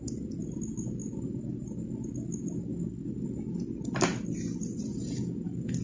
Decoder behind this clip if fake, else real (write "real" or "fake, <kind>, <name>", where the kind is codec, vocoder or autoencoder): real